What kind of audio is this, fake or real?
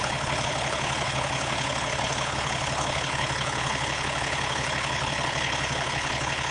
fake